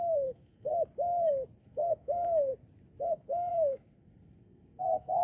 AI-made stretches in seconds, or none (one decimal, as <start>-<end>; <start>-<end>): 0.0-0.7; 1.6-2.5; 3.1-5.2